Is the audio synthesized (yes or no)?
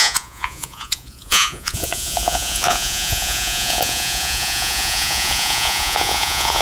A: yes